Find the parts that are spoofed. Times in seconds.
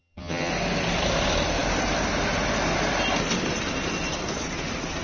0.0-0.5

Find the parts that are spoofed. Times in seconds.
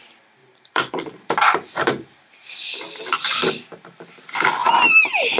0.4-2.8; 4.6-5.4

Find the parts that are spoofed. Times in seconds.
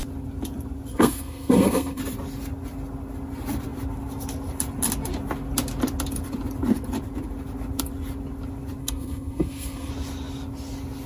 0.9-2.0; 8.8-9.9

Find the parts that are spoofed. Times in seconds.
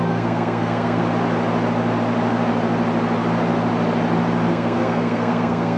0.0-1.0; 4.5-5.8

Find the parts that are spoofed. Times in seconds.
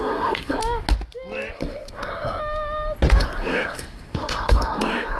0.0-0.6; 1.5-2.4; 3.2-5.2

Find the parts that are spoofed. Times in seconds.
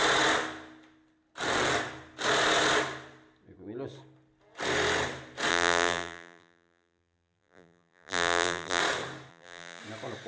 5.5-8.8; 9.3-9.8